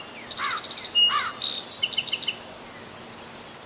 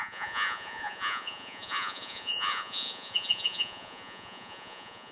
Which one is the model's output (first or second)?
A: second